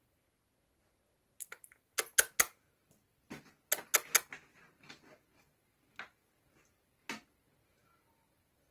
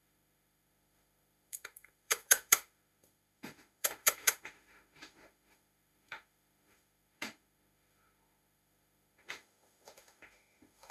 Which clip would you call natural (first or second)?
first